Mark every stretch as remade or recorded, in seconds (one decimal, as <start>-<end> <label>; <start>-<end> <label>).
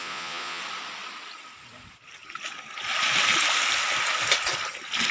0.0-0.6 remade; 0.6-5.1 recorded